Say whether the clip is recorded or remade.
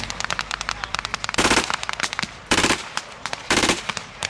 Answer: remade